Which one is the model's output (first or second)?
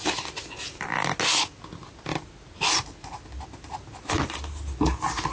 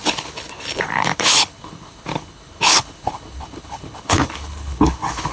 second